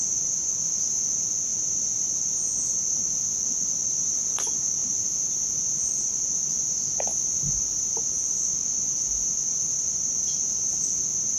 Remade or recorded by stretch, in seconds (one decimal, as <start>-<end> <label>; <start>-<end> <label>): 0.0-1.5 recorded; 1.5-2.3 remade; 2.3-4.8 recorded; 4.8-6.0 remade; 6.0-7.1 recorded; 7.1-11.4 remade